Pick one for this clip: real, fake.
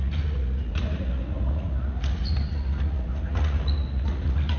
fake